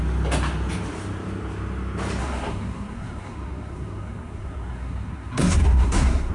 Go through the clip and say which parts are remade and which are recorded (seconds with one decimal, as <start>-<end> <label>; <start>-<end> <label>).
0.0-2.2 recorded; 2.2-6.3 remade